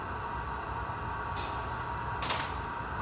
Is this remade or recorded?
remade